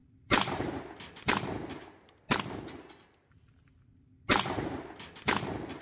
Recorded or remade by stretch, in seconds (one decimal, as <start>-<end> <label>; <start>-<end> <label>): 0.0-0.8 remade; 0.8-5.8 recorded